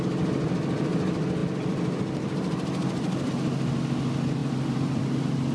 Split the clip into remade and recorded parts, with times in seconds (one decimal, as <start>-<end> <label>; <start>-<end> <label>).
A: 0.0-1.4 recorded; 1.4-3.3 remade; 3.3-4.4 recorded; 4.4-5.0 remade; 5.0-5.5 recorded